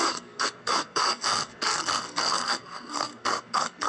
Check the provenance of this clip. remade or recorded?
remade